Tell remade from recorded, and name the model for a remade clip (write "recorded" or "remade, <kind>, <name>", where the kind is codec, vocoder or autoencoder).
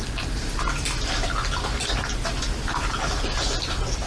recorded